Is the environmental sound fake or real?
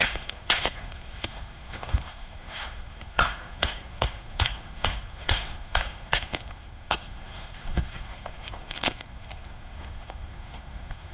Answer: fake